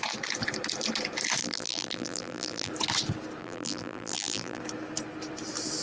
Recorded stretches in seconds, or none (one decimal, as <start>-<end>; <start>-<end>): 0.0-1.4; 2.7-3.4; 4.6-5.8